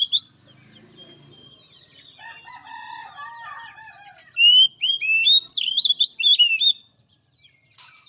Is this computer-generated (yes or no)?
no